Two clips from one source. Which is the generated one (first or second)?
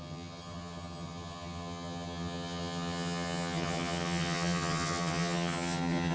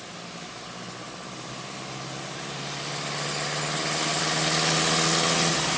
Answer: first